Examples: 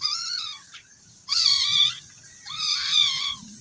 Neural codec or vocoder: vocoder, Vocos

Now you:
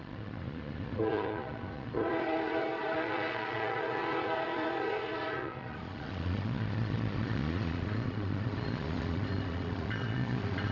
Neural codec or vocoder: vocoder, Vocos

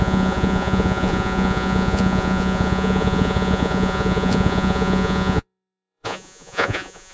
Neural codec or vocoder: vocoder, Vocos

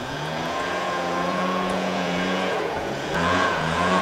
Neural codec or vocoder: vocoder, Vocos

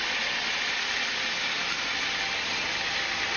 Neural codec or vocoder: none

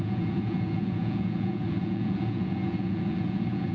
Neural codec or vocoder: vocoder, Vocos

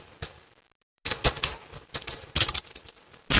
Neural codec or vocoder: none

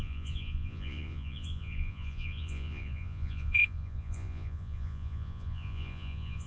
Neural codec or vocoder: vocoder, Vocos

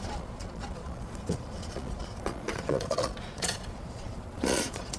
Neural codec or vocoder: vocoder, Vocos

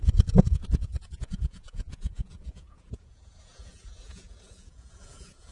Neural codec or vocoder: vocoder, Vocos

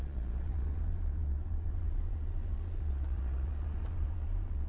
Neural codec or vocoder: vocoder, Vocos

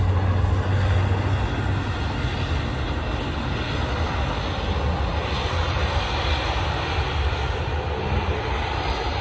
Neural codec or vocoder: none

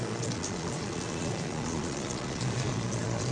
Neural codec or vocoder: vocoder, Vocos